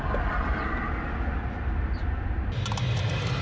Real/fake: real